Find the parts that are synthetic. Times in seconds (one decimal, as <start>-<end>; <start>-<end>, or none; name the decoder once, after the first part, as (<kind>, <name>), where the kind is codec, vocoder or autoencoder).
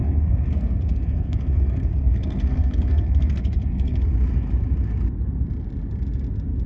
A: 0.0-4.0 (codec, SNAC)